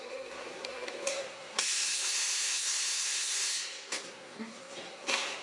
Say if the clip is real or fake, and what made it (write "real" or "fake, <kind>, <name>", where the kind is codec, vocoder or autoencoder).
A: fake, codec, SNAC